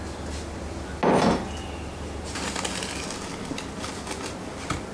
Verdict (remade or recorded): recorded